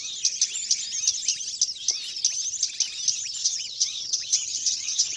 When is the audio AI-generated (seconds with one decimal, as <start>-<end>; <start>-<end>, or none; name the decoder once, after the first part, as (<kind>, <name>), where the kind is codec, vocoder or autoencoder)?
3.4-5.2 (vocoder, WaveNeXt)